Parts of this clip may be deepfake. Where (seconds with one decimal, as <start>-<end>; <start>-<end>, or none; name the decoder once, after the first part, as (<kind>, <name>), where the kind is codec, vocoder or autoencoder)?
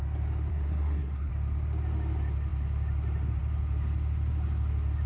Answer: 0.5-1.3 (codec, SNAC)